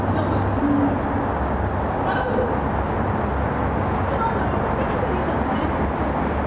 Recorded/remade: recorded